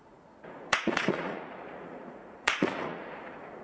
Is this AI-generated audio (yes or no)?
yes